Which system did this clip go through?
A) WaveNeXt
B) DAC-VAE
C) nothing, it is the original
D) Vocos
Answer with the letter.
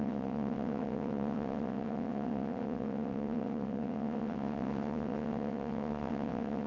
A